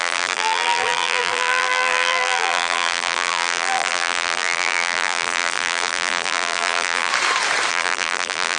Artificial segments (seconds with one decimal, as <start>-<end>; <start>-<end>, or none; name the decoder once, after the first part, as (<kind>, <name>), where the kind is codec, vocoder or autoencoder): 0.0-7.1 (vocoder, BigVGAN v2); 7.7-8.6